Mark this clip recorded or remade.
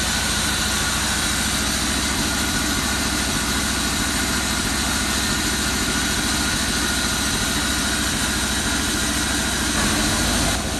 recorded